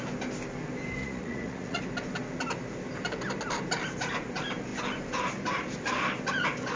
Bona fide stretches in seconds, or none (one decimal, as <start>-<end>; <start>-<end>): 0.0-1.0; 1.8-6.8